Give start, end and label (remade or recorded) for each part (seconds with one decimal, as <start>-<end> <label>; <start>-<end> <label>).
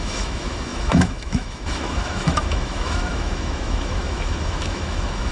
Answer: 0.0-5.3 remade